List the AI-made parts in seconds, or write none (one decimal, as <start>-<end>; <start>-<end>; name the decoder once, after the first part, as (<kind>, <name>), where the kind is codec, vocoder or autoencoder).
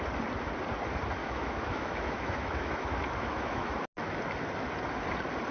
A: 1.2-3.8 (autoencoder, DAC-VAE)